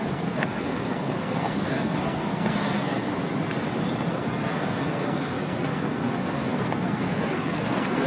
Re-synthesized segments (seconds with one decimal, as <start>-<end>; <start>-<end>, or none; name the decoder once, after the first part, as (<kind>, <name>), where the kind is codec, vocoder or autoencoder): 0.0-3.1 (codec, SNAC); 4.1-8.1

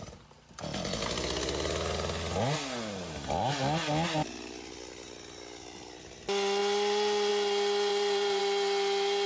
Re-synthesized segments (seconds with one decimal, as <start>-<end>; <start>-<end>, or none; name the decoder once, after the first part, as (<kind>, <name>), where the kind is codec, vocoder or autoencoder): 7.9-8.4 (vocoder, BigVGAN v2)

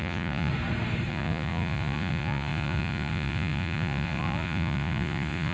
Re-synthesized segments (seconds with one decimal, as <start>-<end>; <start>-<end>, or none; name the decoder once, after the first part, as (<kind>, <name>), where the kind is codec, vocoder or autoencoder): 0.0-0.5 (vocoder, Vocos); 1.1-5.5

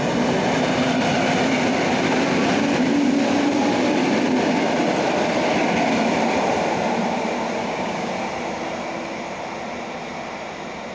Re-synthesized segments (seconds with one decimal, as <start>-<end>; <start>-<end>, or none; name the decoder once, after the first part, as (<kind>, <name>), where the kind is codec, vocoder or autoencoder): 7.6-8.1 (codec, DAC)

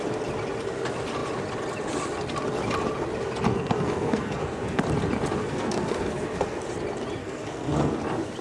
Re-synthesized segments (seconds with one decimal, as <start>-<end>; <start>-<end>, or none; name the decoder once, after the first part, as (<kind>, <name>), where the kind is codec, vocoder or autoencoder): 3.5-4.8 (codec, SNAC); 5.4-6.6; 7.2-8.0

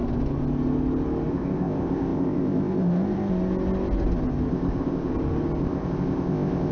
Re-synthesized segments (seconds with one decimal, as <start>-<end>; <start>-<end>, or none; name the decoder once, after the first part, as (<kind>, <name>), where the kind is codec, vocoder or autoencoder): 1.3-3.3 (codec, ZipCodec); 4.5-5.1; 5.6-6.7

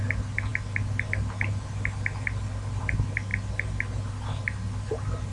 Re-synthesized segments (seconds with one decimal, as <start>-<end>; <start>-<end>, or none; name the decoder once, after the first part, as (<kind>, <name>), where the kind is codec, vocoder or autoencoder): none